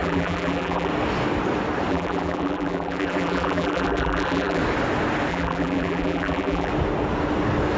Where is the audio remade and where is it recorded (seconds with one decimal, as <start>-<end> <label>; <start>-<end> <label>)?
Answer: 0.0-0.9 remade; 0.9-1.9 recorded; 1.9-4.6 remade; 4.6-5.3 recorded; 5.3-6.7 remade; 6.7-7.8 recorded